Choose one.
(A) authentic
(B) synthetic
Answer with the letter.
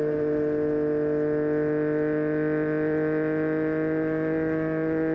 A